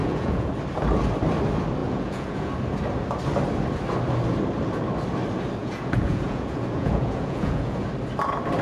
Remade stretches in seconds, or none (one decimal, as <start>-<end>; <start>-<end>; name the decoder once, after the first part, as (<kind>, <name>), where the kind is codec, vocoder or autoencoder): 0.0-0.5 (vocoder, Vocos); 1.8-2.5; 5.6-7.9